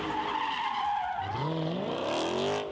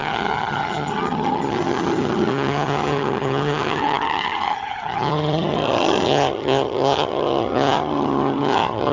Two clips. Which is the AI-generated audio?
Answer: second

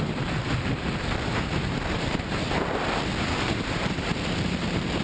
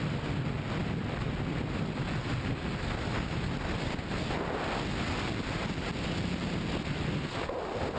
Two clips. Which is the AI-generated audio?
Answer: first